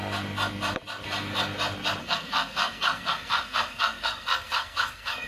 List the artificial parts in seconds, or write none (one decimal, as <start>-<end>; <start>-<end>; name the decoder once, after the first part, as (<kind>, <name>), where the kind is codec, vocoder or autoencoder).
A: 2.0-5.3 (codec, SNAC)